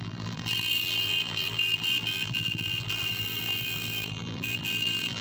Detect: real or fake fake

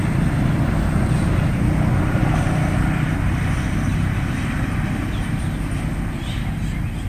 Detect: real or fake real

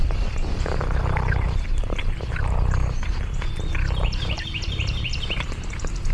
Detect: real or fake fake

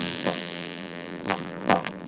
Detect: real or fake fake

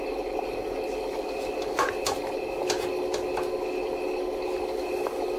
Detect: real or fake real